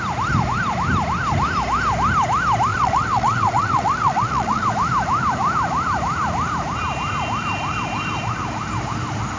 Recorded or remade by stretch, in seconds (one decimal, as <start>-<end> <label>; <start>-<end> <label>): 0.0-2.7 recorded; 2.7-4.7 remade; 4.7-9.4 recorded

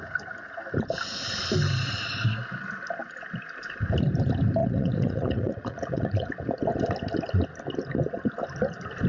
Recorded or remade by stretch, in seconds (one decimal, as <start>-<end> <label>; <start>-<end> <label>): 0.0-4.6 recorded; 4.6-6.3 remade; 6.3-9.1 recorded

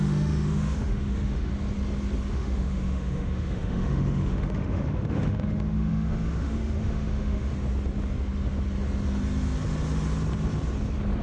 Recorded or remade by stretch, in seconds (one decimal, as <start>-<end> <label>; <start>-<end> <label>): 0.0-1.5 remade; 1.5-2.3 recorded; 2.3-7.5 remade; 7.5-11.2 recorded

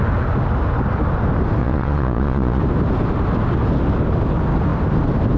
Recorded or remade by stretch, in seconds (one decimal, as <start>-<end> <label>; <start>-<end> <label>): 0.0-1.6 recorded; 1.6-2.6 remade; 2.6-5.4 recorded

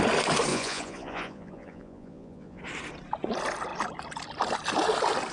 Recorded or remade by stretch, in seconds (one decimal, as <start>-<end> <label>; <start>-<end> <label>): 0.0-0.5 recorded; 0.5-2.6 remade; 2.6-5.3 recorded

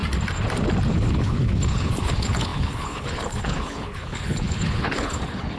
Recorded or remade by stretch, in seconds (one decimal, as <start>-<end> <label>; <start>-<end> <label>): 0.0-0.9 recorded; 0.9-5.6 remade